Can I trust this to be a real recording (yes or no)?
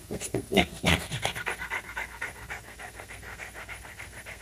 no